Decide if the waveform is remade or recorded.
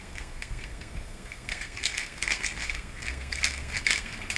remade